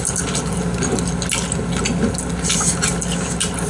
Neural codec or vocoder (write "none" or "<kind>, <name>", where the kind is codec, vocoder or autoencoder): none